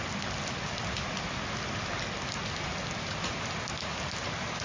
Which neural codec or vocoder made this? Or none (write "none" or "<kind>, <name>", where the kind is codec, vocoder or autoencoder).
none